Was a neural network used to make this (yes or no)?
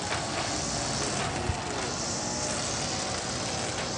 no